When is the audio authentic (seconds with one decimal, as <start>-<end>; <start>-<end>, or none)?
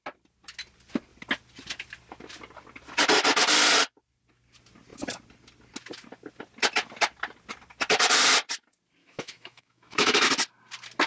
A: 0.0-9.0; 10.3-11.1